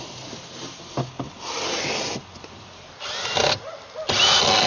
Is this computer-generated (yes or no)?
no